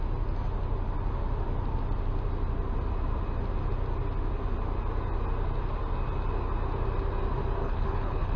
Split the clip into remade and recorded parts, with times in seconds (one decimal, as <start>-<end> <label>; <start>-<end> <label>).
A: 0.0-7.6 recorded; 7.6-8.4 remade